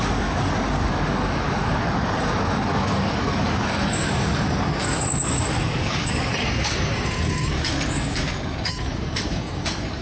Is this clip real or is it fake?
fake